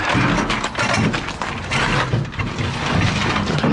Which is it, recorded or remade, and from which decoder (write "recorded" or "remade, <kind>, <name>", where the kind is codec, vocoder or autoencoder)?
recorded